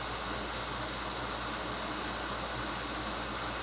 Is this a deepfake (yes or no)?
no